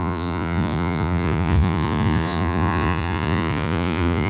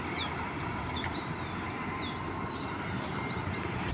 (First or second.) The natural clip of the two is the second